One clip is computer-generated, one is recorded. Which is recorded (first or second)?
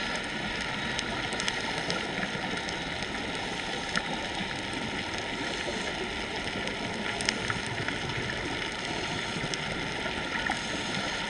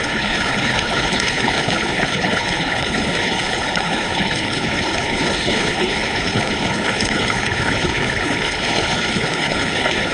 first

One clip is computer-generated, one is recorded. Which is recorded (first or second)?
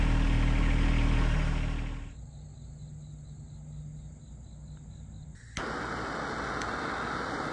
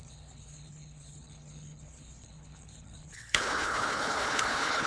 first